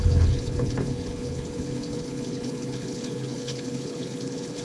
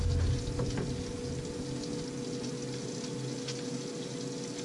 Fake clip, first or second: first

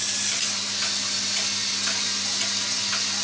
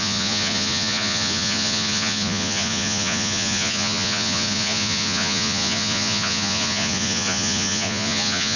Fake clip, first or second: second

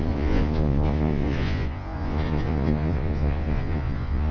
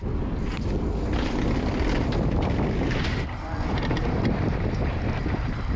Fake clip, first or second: first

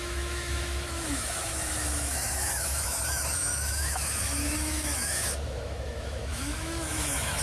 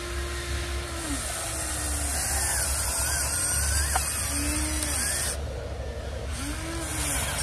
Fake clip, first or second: first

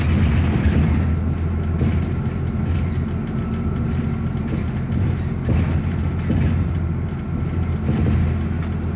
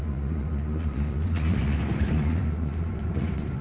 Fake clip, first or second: second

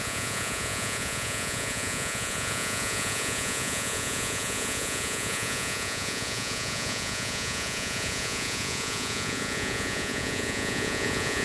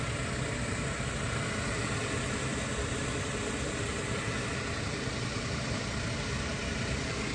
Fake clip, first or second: first